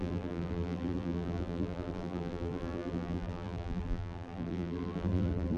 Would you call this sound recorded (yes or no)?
no